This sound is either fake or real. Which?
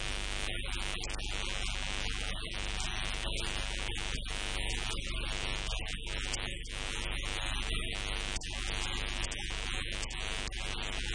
real